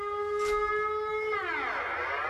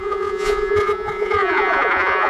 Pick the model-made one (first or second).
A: second